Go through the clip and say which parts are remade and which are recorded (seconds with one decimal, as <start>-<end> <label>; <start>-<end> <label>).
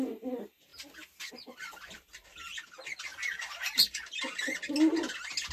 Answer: 0.0-3.1 recorded; 3.1-4.2 remade; 4.2-5.5 recorded